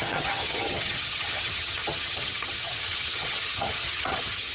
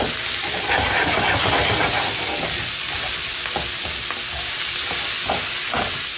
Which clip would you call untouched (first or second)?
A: second